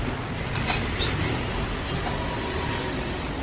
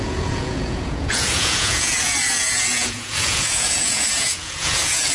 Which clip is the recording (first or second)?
first